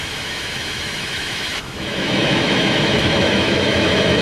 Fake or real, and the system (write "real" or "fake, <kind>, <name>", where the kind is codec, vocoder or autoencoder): fake, autoencoder, DAC-VAE